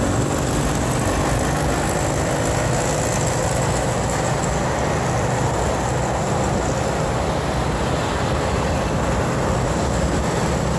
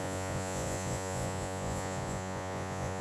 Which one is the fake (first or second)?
second